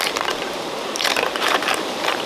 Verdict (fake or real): fake